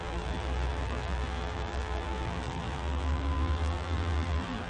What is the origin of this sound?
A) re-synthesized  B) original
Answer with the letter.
A